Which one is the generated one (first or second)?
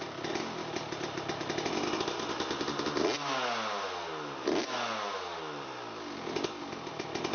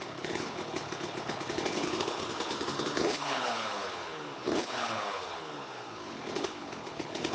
second